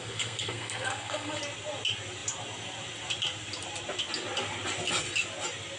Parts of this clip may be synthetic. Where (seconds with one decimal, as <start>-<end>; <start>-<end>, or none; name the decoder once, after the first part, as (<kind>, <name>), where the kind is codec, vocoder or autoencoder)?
0.0-1.4 (codec, SNAC)

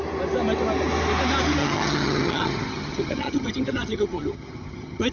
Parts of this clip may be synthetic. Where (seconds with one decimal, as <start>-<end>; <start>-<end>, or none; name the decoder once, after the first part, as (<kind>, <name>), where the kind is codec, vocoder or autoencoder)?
1.6-5.1 (vocoder, HiFi-GAN)

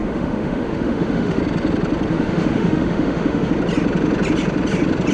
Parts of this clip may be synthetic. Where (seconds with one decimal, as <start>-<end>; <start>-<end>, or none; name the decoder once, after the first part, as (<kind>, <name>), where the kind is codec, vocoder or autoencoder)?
0.0-1.4 (autoencoder, DAC-VAE); 2.1-3.5

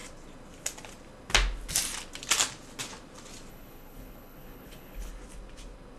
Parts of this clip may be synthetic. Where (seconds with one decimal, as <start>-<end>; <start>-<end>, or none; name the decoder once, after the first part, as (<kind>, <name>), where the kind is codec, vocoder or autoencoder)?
3.5-5.1 (codec, HILCodec)

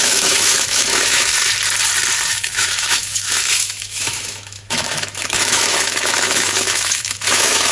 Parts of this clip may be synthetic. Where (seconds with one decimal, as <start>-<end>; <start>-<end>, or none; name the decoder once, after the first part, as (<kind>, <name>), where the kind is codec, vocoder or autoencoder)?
0.0-1.3 (autoencoder, DAC-VAE); 2.3-7.7

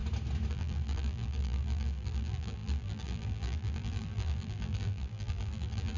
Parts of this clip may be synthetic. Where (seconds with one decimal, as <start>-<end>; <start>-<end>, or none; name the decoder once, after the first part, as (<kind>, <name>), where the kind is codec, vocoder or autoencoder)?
0.5-6.0 (vocoder, BigVGAN v2)

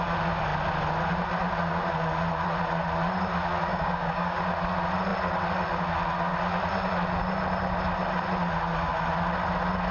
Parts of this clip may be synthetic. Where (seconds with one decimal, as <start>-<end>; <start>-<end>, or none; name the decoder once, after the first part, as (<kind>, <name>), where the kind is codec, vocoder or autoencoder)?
3.7-4.4 (codec, DAC)